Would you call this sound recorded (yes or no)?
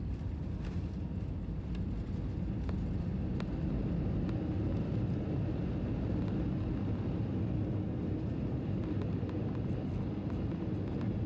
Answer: yes